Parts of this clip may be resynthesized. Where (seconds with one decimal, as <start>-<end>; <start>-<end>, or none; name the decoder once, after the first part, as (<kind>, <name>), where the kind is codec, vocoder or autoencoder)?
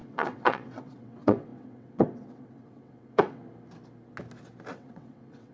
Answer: 0.0-3.4 (vocoder, WaveNeXt); 4.7-5.5